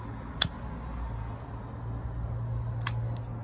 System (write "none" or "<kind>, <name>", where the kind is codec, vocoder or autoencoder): none